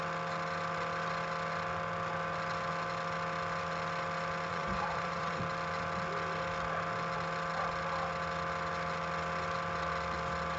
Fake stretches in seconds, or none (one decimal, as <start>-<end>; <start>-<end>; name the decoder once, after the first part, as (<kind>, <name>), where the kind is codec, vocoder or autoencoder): 4.5-5.4 (vocoder, Vocos)